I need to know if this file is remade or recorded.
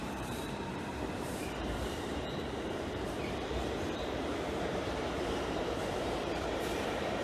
remade